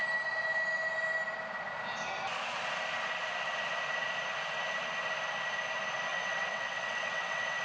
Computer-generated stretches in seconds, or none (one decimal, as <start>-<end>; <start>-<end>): 6.1-7.6